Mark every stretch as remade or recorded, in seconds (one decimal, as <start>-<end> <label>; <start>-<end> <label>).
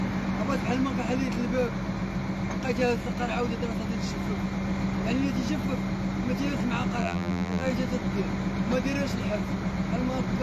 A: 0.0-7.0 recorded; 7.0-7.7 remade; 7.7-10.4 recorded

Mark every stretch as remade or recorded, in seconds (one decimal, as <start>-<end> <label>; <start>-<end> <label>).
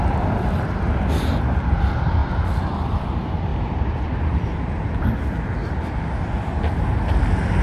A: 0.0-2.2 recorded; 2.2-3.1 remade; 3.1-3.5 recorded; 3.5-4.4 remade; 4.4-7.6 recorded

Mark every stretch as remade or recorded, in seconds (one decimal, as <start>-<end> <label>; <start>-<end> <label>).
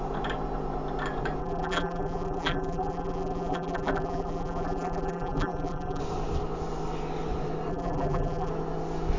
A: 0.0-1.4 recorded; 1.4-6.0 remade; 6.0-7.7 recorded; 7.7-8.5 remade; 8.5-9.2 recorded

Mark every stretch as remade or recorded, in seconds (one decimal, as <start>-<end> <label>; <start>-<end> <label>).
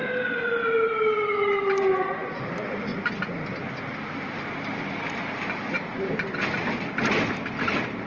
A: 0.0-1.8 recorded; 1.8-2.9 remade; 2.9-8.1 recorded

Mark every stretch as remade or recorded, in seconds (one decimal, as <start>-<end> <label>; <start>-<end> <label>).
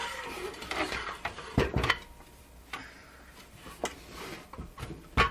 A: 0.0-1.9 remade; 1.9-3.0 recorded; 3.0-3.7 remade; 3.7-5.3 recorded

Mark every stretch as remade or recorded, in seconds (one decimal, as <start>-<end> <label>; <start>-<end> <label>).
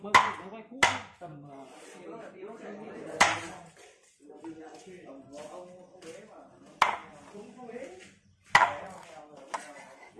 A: 0.0-1.3 recorded; 1.3-5.1 remade; 5.1-10.2 recorded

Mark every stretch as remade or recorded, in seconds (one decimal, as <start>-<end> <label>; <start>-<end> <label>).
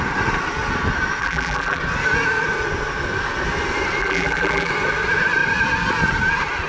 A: 0.0-1.2 recorded; 1.2-1.8 remade; 1.8-4.0 recorded; 4.0-4.7 remade; 4.7-6.7 recorded